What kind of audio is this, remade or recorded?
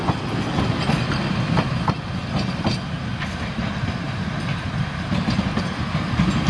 recorded